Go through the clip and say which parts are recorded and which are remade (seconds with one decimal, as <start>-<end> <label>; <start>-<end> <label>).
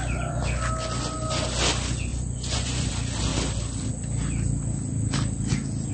0.0-2.1 recorded; 2.1-2.9 remade; 2.9-5.9 recorded